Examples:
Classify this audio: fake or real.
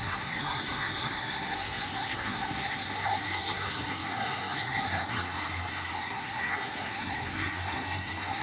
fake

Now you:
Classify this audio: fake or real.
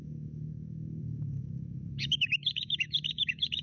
fake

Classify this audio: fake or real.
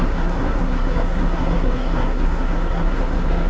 fake